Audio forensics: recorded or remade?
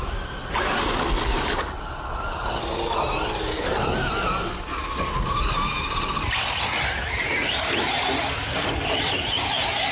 recorded